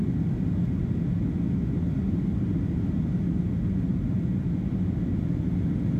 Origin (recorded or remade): recorded